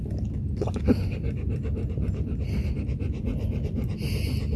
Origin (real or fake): real